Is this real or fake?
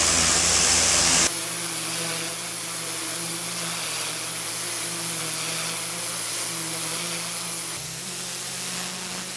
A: real